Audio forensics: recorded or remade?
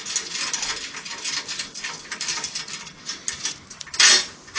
recorded